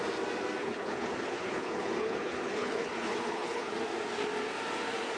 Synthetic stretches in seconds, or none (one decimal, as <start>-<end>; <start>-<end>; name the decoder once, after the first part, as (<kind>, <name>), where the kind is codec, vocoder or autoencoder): 0.6-3.7 (codec, HILCodec)